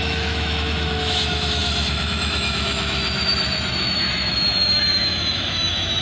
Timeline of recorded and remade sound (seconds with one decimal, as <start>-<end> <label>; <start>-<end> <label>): 0.0-6.0 remade